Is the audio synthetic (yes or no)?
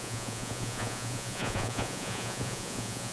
yes